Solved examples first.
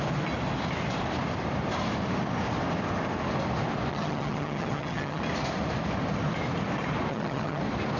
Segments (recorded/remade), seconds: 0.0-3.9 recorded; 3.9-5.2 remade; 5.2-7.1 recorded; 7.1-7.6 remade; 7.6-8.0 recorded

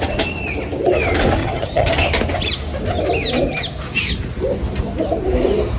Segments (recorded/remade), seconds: 0.0-1.4 recorded; 1.4-1.9 remade; 1.9-5.8 recorded

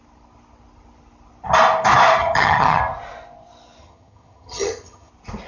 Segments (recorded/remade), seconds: 0.0-2.2 recorded; 2.2-2.8 remade; 2.8-3.8 recorded; 3.8-5.1 remade; 5.1-5.5 recorded

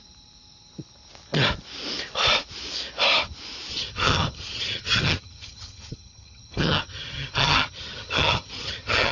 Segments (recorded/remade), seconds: 0.0-3.7 recorded; 3.7-9.1 remade

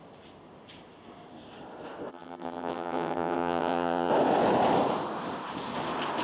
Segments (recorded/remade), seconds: 0.0-2.1 recorded; 2.1-4.1 remade; 4.1-6.2 recorded

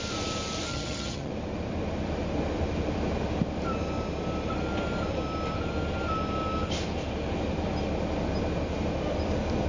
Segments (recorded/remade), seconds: 0.0-0.7 recorded; 0.7-1.3 remade; 1.3-9.7 recorded

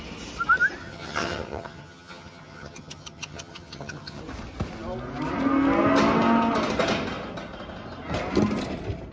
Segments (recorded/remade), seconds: 0.0-0.8 recorded; 0.8-4.2 remade; 4.2-9.1 recorded